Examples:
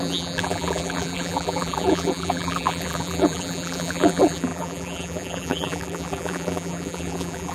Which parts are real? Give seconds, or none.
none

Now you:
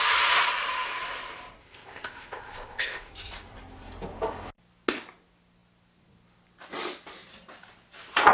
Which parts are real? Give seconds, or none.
0.0-1.6; 3.1-8.3

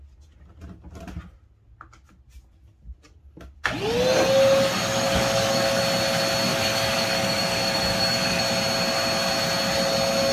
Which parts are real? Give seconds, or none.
0.0-4.9; 5.8-6.5; 8.4-10.3

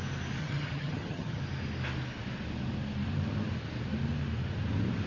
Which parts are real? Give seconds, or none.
0.0-0.4; 1.4-5.1

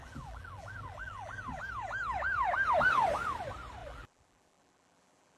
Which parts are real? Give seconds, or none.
1.6-3.8

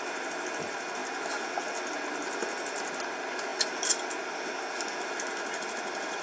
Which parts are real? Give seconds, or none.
0.0-6.2

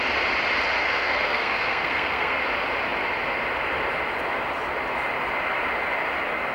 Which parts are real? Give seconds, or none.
0.0-0.8; 2.4-6.5

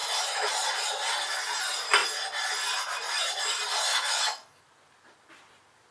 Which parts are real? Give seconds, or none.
0.5-3.9; 4.6-5.9